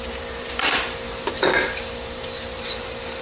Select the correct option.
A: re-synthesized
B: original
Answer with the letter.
A